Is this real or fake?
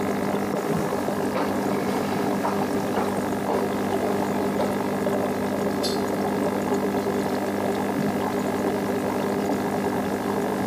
real